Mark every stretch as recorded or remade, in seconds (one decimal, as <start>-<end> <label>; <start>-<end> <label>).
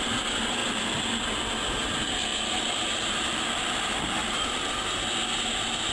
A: 0.0-2.3 recorded; 2.3-3.6 remade; 3.6-4.2 recorded; 4.2-4.7 remade; 4.7-5.9 recorded